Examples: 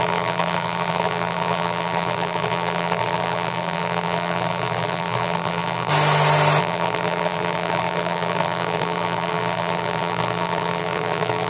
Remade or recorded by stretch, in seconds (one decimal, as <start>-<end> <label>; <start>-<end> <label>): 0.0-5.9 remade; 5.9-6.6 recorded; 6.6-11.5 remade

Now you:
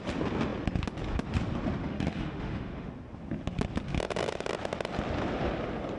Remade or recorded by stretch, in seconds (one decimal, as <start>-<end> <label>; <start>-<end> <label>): 0.0-1.8 recorded; 1.8-2.9 remade; 2.9-6.0 recorded

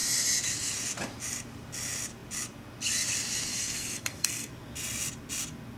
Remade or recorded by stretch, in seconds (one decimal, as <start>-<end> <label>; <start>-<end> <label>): 0.0-3.5 recorded; 3.5-4.5 remade; 4.5-5.8 recorded

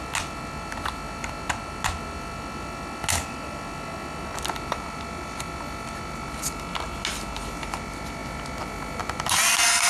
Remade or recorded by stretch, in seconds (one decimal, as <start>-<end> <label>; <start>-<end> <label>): 0.0-9.9 recorded

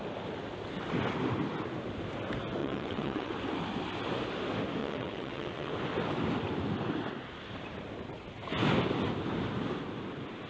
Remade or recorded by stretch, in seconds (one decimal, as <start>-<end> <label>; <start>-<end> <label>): 0.0-2.6 recorded; 2.6-3.3 remade; 3.3-4.8 recorded; 4.8-5.7 remade; 5.7-10.5 recorded